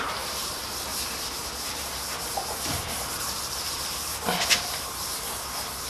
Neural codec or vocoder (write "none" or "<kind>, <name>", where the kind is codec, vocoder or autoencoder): vocoder, BigVGAN v2